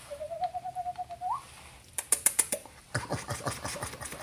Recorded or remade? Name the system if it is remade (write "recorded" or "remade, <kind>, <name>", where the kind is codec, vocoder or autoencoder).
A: recorded